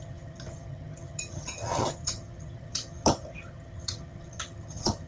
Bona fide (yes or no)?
no